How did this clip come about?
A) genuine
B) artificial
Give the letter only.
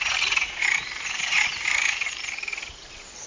B